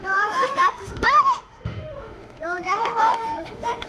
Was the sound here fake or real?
fake